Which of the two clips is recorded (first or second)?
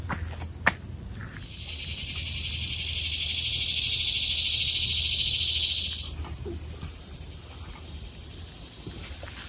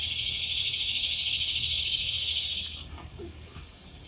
first